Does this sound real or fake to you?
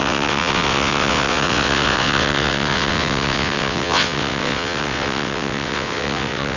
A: fake